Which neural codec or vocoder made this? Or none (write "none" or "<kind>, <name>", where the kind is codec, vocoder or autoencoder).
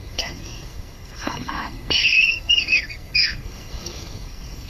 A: codec, SNAC